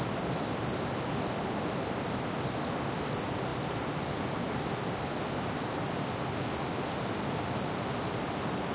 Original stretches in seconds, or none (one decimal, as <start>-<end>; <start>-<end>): 0.0-8.7